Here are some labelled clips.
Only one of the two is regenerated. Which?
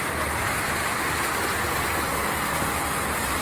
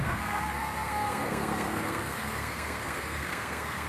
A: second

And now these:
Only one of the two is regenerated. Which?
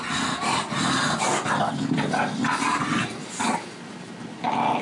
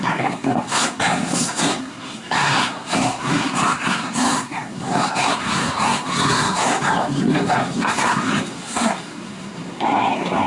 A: second